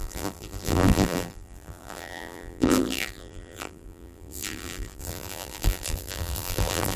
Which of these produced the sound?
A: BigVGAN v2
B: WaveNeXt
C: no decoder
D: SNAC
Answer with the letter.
A